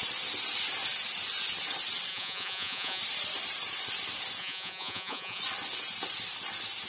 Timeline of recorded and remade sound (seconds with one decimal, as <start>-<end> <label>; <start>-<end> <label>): 0.0-2.1 recorded; 2.1-3.0 remade; 3.0-4.4 recorded; 4.4-5.4 remade; 5.4-6.9 recorded